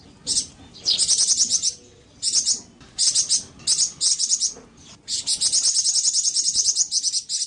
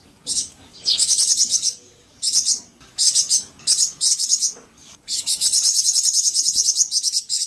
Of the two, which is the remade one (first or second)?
second